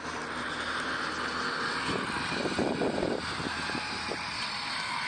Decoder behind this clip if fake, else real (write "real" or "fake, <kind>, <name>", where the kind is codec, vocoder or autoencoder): real